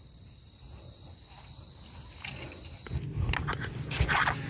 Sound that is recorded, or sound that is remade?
recorded